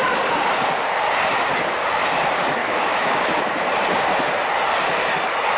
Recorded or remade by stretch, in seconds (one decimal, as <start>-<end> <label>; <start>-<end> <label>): 0.0-2.6 recorded; 2.6-3.2 remade; 3.2-5.6 recorded